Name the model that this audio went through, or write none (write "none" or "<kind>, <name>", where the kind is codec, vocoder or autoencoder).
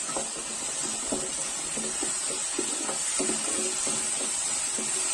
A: none